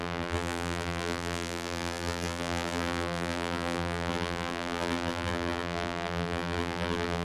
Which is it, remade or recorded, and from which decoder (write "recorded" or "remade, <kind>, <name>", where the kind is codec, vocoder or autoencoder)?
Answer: remade, vocoder, BigVGAN v2